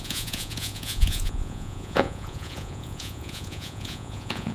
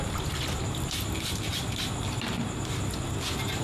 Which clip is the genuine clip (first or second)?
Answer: second